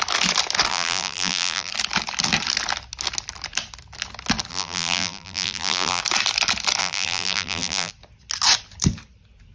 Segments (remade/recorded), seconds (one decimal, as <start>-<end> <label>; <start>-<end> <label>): 0.0-0.7 recorded; 0.7-1.7 remade; 1.7-4.5 recorded; 4.5-6.0 remade; 6.0-6.8 recorded; 6.8-7.9 remade; 7.9-9.5 recorded